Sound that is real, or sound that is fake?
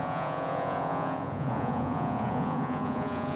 fake